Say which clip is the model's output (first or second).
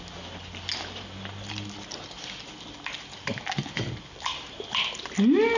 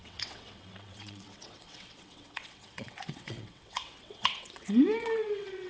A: second